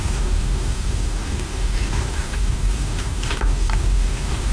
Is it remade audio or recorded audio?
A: remade